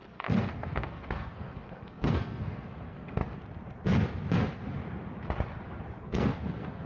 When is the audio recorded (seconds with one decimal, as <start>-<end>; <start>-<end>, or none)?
3.2-6.0